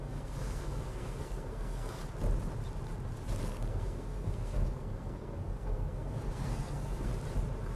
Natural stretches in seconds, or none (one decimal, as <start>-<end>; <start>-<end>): 2.0-3.4; 7.1-7.8